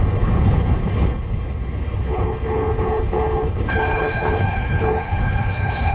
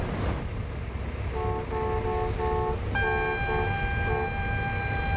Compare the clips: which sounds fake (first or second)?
first